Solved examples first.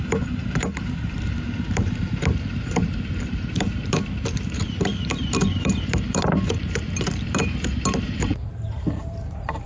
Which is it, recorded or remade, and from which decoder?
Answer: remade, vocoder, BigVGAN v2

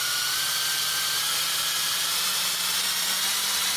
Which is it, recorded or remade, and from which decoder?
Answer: remade, vocoder, BigVGAN v2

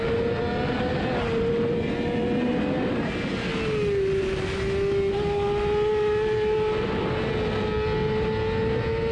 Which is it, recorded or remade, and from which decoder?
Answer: recorded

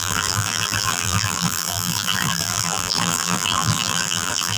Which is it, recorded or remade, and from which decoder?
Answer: remade, vocoder, BigVGAN v2